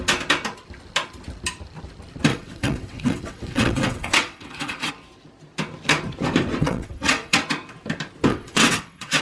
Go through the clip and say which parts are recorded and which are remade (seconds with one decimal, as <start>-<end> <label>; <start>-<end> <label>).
0.0-2.3 recorded; 2.3-4.9 remade; 4.9-6.6 recorded; 6.6-7.4 remade; 7.4-8.3 recorded; 8.3-9.2 remade